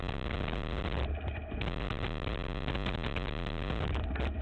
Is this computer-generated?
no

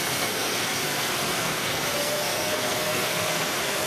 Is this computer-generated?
yes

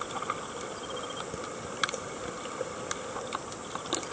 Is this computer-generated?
no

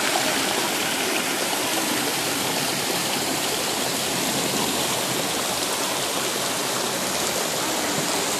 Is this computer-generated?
yes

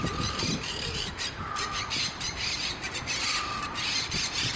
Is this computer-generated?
yes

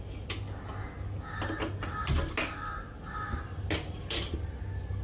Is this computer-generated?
no